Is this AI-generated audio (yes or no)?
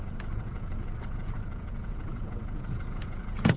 yes